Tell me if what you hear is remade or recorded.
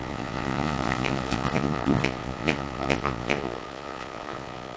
remade